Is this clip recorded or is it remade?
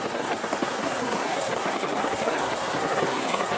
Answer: remade